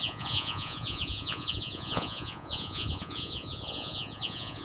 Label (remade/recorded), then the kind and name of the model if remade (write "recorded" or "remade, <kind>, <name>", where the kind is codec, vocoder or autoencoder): remade, vocoder, Vocos